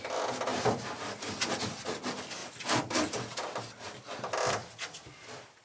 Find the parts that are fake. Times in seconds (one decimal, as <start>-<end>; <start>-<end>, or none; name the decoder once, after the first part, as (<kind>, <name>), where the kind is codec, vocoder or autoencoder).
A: 0.5-1.5 (vocoder, BigVGAN v2); 2.4-3.0; 4.6-5.6